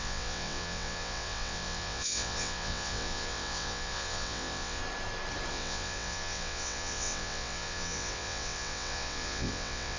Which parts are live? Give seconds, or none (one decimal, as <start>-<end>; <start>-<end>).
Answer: 4.8-5.5